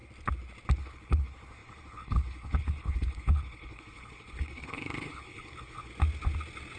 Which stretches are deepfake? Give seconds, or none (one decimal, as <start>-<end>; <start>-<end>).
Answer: 0.8-5.9